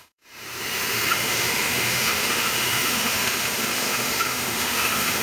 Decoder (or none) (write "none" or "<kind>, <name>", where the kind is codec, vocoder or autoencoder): autoencoder, DAC-VAE